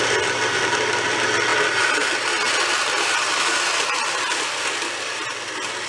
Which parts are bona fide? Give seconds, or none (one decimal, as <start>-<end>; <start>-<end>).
0.0-5.9